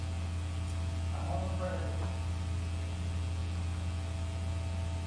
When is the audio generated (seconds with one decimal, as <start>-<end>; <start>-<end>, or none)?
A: none